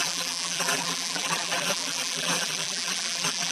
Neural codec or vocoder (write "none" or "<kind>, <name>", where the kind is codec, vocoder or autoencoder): vocoder, BigVGAN v2